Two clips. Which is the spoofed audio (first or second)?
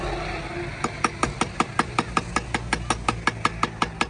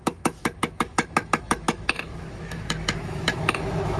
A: second